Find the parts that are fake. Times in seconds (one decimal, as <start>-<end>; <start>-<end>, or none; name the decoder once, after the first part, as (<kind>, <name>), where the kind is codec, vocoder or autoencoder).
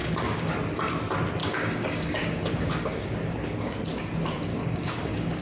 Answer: 0.0-0.5 (codec, DAC); 1.4-3.8; 4.5-5.4